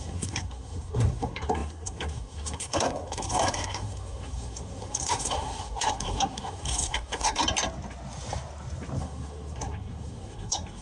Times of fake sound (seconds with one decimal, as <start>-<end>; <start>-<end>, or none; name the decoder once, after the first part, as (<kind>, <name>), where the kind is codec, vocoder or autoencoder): 0.0-7.4 (codec, SNAC); 9.0-10.8